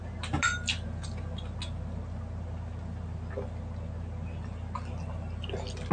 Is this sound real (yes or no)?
yes